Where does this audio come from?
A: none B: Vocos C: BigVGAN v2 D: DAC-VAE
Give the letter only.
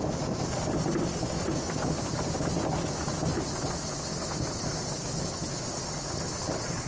A